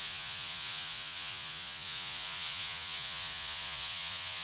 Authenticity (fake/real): fake